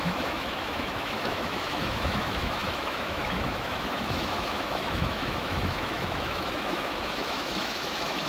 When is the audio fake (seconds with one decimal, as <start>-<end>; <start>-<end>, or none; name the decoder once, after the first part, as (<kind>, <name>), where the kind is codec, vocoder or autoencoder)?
0.0-8.3 (autoencoder, DAC-VAE)